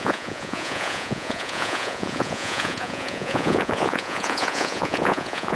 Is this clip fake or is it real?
fake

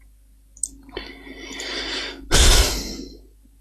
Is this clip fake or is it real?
real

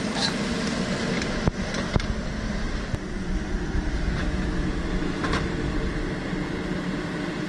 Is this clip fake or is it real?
real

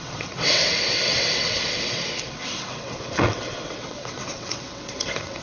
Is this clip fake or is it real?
fake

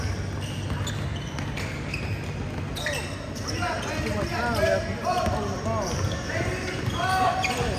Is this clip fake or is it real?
real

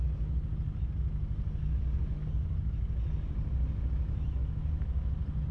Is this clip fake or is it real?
real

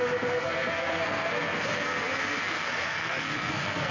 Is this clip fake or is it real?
fake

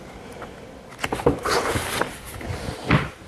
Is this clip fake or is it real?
real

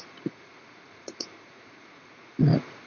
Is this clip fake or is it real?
fake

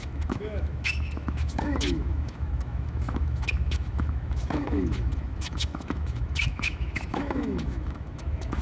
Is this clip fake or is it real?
fake